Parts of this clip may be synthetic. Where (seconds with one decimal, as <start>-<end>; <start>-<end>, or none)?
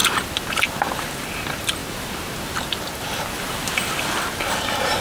0.0-5.0